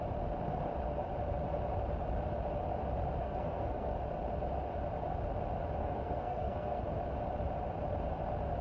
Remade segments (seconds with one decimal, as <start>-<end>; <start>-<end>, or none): 3.2-4.0; 5.8-6.8